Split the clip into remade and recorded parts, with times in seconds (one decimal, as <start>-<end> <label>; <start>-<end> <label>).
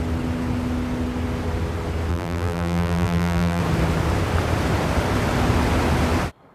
0.0-2.1 recorded; 2.1-3.6 remade; 3.6-6.5 recorded